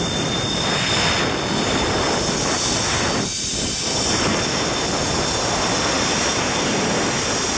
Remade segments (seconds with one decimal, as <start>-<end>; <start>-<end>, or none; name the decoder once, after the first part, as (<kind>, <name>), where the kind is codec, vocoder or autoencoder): none